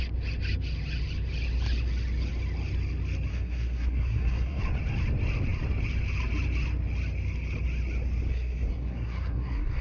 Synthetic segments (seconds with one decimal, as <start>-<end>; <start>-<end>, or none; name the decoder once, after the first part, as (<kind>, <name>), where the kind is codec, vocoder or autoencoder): 3.3-4.6 (codec, SNAC); 8.3-9.8